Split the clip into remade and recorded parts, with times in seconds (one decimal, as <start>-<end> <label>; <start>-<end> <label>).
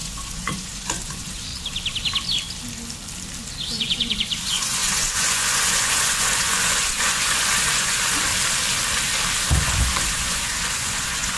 0.0-1.5 remade; 1.5-3.8 recorded; 3.8-8.3 remade; 8.3-9.4 recorded; 9.4-11.4 remade